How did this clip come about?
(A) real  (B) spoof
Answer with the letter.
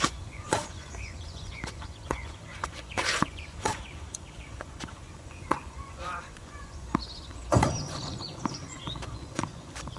B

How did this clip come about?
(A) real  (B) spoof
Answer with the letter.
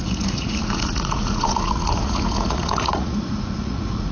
B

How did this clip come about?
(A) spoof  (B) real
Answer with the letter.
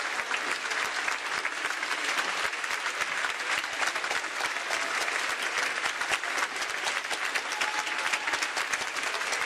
B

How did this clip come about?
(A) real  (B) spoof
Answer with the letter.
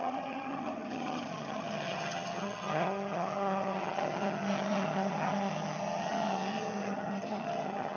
B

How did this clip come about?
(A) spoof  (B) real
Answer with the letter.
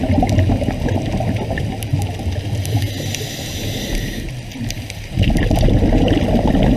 B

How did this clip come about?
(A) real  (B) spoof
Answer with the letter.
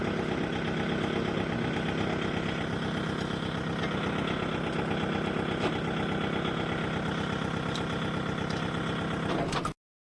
A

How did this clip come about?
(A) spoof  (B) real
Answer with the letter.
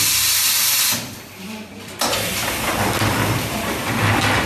A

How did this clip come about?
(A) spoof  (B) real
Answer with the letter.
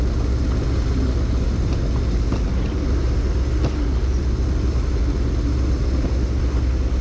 B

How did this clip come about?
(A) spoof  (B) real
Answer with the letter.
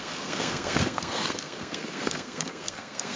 A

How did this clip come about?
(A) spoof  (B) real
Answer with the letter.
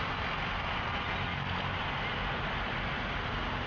B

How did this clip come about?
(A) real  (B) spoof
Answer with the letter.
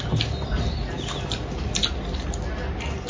A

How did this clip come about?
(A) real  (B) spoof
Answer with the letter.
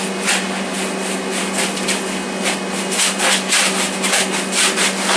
A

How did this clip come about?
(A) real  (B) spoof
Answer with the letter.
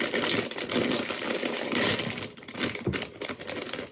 A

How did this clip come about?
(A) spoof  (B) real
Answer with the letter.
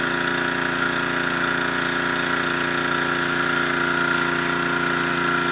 B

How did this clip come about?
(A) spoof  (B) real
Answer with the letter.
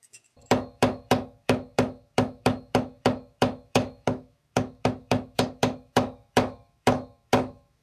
A